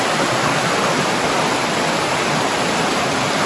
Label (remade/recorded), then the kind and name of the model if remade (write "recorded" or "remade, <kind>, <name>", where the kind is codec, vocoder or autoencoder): recorded